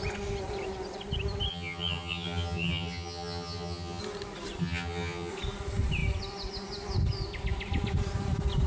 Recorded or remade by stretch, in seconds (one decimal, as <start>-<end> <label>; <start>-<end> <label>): 0.0-1.5 recorded; 1.5-4.0 remade; 4.0-4.6 recorded; 4.6-5.3 remade; 5.3-8.7 recorded

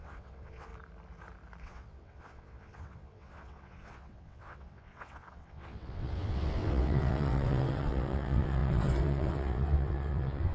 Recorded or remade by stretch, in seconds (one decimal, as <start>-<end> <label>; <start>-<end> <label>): 0.0-0.7 remade; 0.7-1.6 recorded; 1.6-10.5 remade

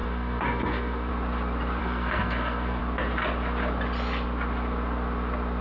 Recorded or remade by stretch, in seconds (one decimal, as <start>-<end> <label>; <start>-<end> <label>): 0.0-1.1 remade; 1.1-1.8 recorded; 1.8-2.8 remade; 2.8-5.6 recorded

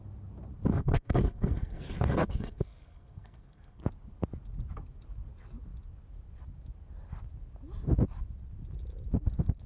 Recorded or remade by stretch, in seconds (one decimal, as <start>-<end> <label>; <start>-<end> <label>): 0.0-0.7 recorded; 0.7-3.8 remade; 3.8-9.7 recorded

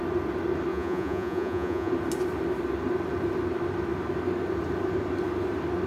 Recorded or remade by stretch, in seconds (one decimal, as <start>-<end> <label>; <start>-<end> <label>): 0.0-0.7 recorded; 0.7-1.9 remade; 1.9-5.9 recorded